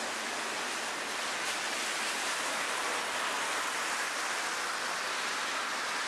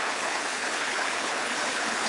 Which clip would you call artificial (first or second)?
second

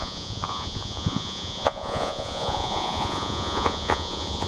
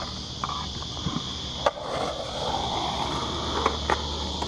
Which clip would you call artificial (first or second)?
first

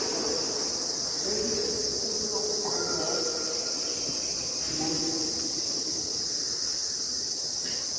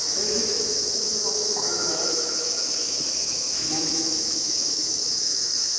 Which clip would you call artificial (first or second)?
second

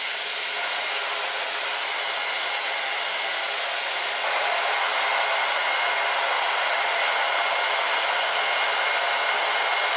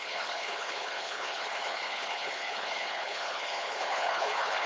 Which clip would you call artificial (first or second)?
second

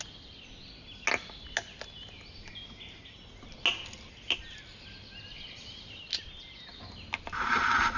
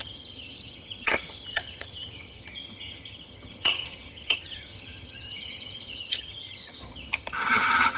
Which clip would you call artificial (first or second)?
second